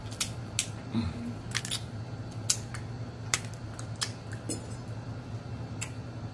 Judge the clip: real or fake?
real